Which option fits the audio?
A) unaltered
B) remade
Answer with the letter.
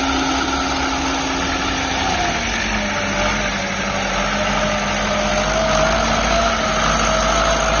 A